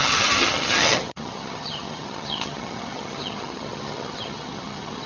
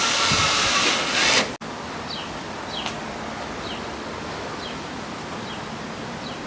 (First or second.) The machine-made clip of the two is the first